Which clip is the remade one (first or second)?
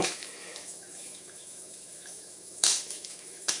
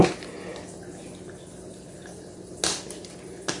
first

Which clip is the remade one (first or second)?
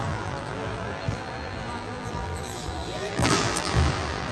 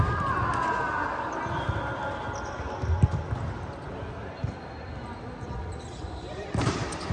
first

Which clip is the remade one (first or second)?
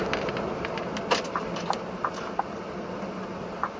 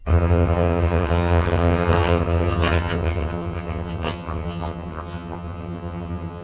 second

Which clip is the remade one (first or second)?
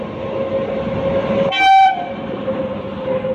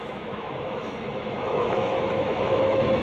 second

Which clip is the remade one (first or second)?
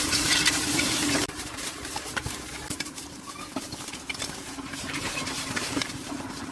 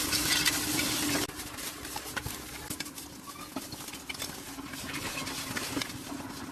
first